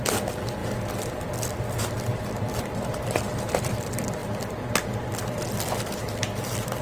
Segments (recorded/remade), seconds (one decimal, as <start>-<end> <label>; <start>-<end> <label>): 0.0-4.2 remade; 4.2-5.7 recorded; 5.7-6.8 remade